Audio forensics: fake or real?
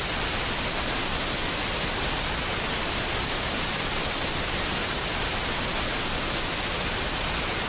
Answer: real